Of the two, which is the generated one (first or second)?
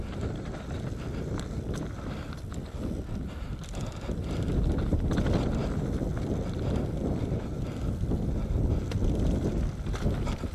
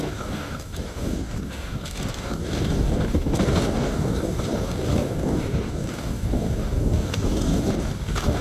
second